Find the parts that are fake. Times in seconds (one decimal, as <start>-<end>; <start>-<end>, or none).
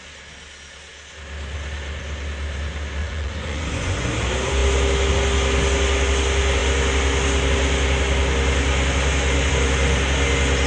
3.0-4.1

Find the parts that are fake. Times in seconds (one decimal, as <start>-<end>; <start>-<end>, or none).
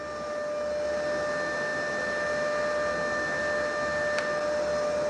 none